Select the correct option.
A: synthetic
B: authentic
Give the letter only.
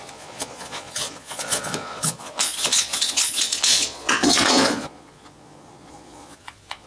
A